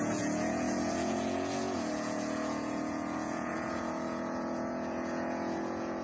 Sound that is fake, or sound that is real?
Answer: fake